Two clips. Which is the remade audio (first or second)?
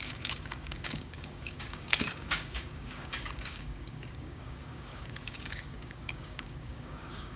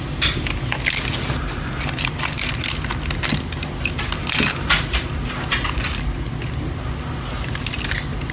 first